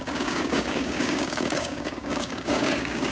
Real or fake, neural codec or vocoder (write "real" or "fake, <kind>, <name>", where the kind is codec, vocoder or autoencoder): fake, codec, DAC